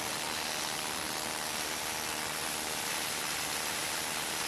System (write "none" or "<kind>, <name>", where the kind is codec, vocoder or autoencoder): none